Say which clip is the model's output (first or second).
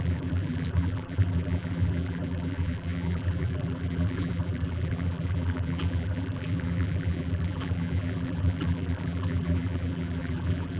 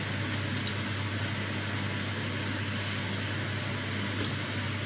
first